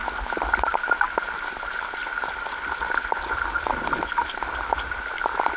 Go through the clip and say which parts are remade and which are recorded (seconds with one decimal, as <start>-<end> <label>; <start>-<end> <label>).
0.0-0.8 recorded; 0.8-2.0 remade; 2.0-3.0 recorded; 3.0-5.6 remade